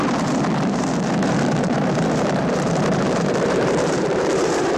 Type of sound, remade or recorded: remade